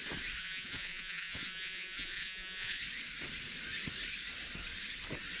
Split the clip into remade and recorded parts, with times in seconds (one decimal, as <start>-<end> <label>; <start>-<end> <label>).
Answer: 0.0-0.4 recorded; 0.4-2.8 remade; 2.8-5.4 recorded